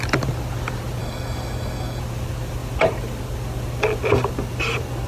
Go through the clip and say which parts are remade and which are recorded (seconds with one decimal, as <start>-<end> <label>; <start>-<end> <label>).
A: 0.0-1.0 recorded; 1.0-2.0 remade; 2.0-5.1 recorded